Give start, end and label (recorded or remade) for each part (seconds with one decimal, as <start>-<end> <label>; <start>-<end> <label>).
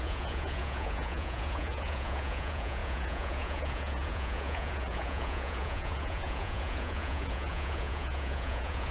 0.0-8.9 remade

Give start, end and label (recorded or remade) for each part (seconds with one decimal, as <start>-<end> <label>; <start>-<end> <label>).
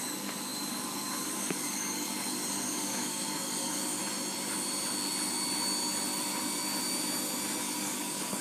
0.0-4.0 remade; 4.0-7.6 recorded; 7.6-8.4 remade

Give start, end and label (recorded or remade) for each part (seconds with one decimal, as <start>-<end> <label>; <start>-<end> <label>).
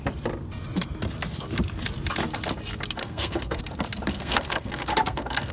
0.0-3.0 recorded; 3.0-3.6 remade; 3.6-4.1 recorded; 4.1-5.5 remade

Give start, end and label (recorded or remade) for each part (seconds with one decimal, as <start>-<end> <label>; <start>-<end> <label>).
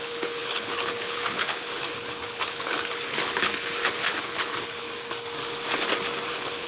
0.0-4.9 remade; 4.9-6.3 recorded; 6.3-6.7 remade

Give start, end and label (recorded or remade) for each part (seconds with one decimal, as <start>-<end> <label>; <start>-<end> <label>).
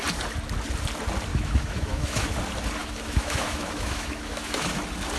0.0-1.3 recorded; 1.3-2.3 remade; 2.3-2.8 recorded; 2.8-4.8 remade; 4.8-5.2 recorded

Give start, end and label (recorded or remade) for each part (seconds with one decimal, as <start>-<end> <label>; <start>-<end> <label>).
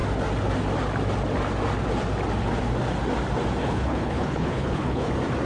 0.0-3.6 recorded; 3.6-5.1 remade; 5.1-5.5 recorded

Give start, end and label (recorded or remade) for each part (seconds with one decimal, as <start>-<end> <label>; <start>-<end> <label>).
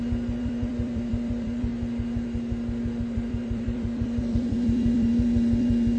0.0-1.7 remade; 1.7-3.0 recorded; 3.0-6.0 remade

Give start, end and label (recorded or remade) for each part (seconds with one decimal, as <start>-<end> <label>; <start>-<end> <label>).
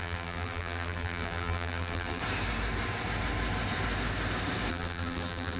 0.0-2.2 remade; 2.2-4.7 recorded; 4.7-5.6 remade